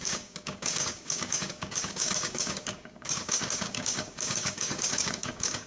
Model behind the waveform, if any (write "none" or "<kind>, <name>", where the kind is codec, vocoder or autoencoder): codec, DAC